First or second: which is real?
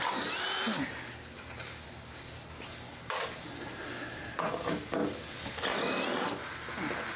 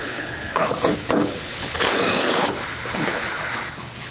first